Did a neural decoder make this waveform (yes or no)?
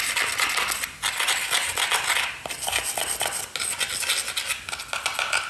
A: no